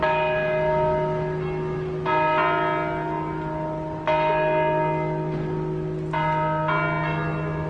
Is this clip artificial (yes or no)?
no